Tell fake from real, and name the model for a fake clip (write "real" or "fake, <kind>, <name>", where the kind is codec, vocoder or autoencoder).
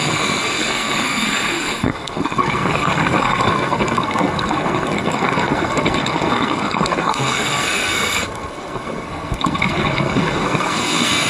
fake, codec, SNAC